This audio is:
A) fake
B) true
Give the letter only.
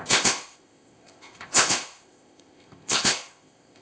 A